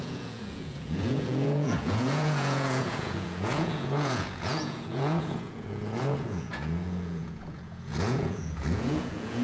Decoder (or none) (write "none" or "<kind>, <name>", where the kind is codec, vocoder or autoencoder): vocoder, Vocos